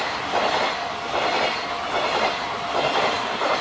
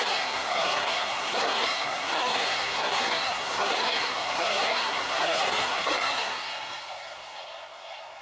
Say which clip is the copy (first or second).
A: second